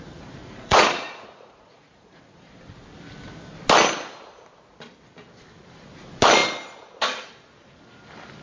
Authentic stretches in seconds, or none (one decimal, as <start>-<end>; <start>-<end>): 0.0-0.4; 2.6-8.4